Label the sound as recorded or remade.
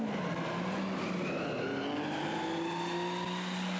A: recorded